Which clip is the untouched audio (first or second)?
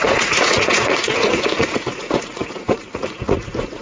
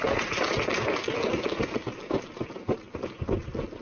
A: second